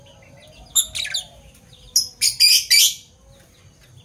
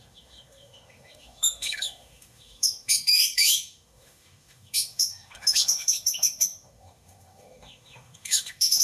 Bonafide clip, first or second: first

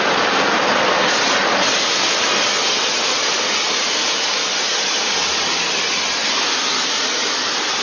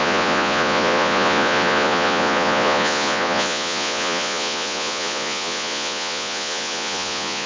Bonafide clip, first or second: first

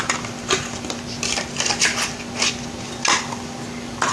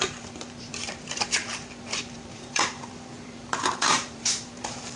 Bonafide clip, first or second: first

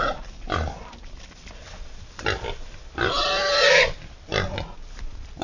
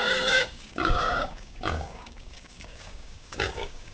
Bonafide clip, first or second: first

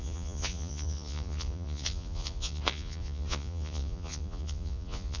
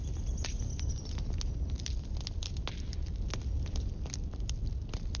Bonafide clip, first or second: second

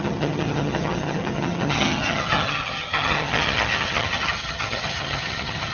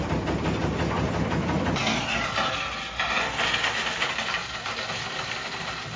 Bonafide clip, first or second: second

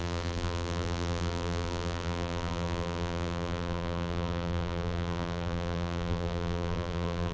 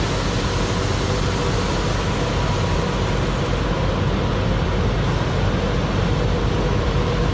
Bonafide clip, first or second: second